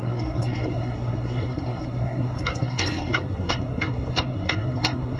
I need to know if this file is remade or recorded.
remade